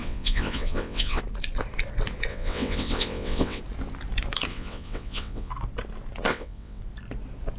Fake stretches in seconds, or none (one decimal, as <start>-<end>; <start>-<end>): 0.0-1.2; 2.3-3.6; 4.5-5.5; 6.3-6.8